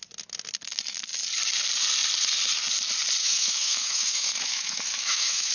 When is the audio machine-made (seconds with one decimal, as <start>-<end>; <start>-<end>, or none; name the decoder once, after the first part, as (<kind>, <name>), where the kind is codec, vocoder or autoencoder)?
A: 3.2-5.5 (autoencoder, DAC-VAE)

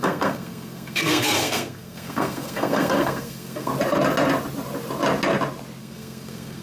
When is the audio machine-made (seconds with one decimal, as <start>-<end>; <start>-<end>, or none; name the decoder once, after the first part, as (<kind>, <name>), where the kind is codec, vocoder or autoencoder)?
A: 0.0-3.7 (codec, SNAC); 5.8-6.6

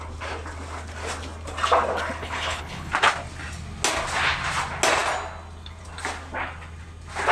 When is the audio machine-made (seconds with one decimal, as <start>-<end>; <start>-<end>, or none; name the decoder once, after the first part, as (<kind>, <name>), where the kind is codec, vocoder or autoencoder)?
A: 2.2-2.9 (codec, HILCodec)

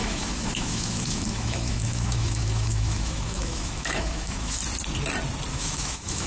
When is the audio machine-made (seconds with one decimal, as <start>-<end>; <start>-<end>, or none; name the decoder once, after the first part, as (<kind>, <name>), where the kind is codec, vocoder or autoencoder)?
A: 0.0-4.6 (autoencoder, DAC-VAE); 5.5-6.3

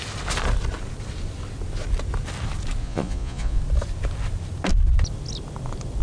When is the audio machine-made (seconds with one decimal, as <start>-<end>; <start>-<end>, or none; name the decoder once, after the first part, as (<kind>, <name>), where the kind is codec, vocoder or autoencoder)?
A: 2.8-3.6 (vocoder, Vocos)

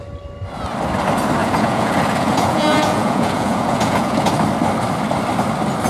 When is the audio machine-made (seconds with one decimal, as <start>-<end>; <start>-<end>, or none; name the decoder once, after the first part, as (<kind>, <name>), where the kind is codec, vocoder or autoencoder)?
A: 1.4-4.3 (vocoder, Vocos)